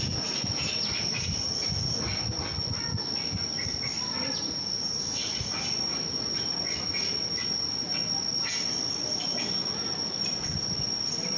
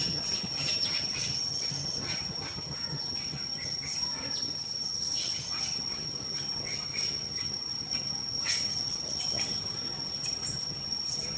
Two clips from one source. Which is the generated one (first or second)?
second